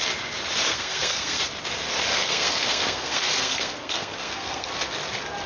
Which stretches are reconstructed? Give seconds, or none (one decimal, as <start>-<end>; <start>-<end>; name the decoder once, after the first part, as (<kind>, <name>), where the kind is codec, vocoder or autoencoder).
0.7-1.4 (codec, SNAC); 2.1-4.7